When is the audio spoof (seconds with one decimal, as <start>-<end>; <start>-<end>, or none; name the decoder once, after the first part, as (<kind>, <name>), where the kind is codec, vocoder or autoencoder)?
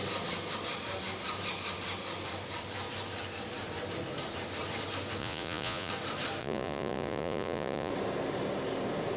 5.2-5.9 (vocoder, Vocos); 6.4-7.9